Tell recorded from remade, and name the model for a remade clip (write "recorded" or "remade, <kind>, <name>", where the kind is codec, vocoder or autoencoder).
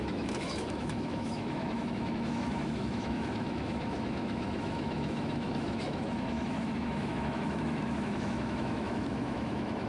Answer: remade, autoencoder, DAC-VAE